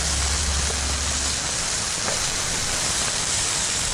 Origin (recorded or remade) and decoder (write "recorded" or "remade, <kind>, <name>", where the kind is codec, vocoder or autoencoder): recorded